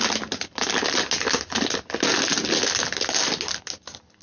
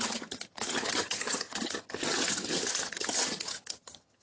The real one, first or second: first